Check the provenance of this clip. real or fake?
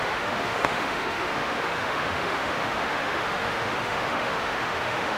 fake